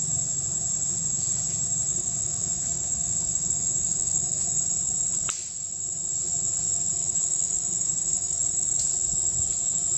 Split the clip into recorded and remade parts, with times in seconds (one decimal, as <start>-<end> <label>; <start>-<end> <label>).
0.0-1.9 recorded; 1.9-4.6 remade; 4.6-7.0 recorded; 7.0-8.8 remade; 8.8-10.0 recorded